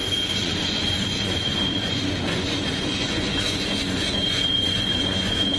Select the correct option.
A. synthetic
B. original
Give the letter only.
A